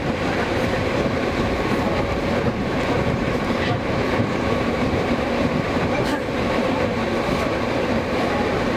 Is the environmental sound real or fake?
fake